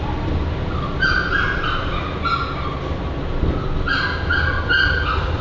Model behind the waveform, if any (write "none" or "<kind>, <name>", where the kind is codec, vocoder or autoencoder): none